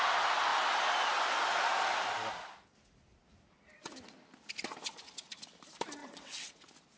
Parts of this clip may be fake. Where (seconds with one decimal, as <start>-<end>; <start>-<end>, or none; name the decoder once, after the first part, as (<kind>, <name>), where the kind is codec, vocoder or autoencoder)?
6.0-6.6 (vocoder, WaveNeXt)